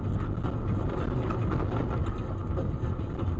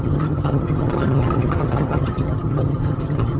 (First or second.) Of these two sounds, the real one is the first